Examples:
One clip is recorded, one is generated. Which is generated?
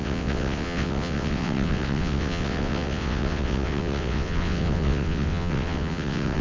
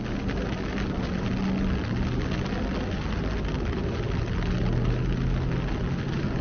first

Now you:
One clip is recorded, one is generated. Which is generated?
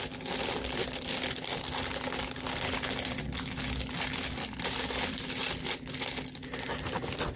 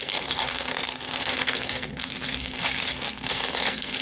second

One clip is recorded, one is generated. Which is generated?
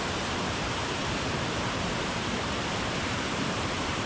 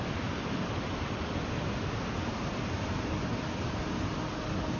first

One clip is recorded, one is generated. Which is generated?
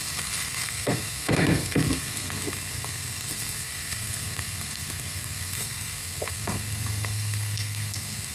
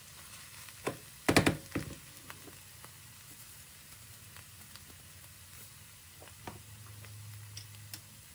first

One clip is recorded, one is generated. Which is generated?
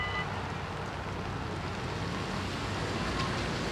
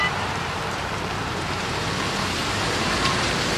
second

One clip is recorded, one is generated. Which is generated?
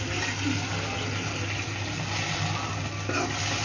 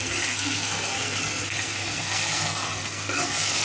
second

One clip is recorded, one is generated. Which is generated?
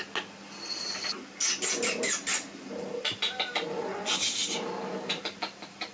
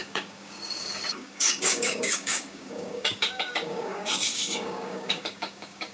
second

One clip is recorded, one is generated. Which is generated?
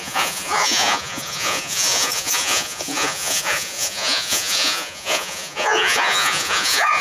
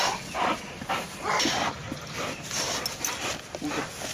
first